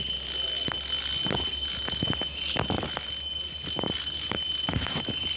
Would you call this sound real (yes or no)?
yes